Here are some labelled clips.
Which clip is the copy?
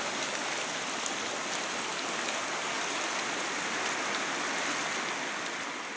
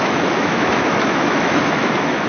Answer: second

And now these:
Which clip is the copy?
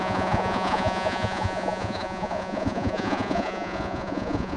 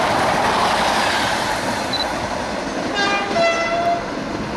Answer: first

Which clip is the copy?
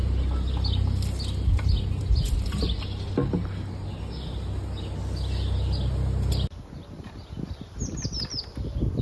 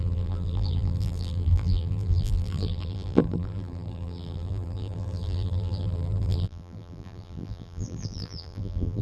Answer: second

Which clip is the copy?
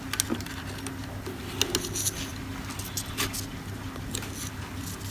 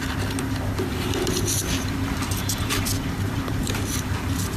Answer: second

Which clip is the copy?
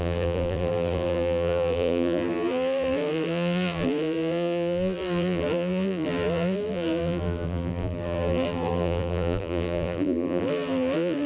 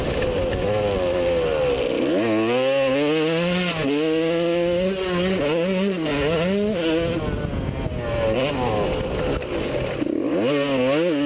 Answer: first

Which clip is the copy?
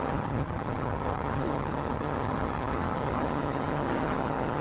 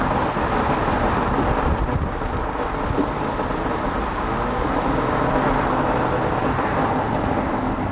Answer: first